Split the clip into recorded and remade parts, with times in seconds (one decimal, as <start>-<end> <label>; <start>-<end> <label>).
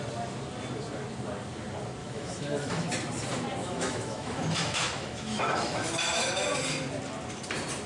0.0-2.0 recorded; 2.0-2.9 remade; 2.9-3.6 recorded; 3.6-5.9 remade; 5.9-7.9 recorded